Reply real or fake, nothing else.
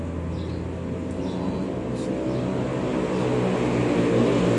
real